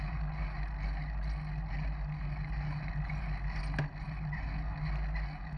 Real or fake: real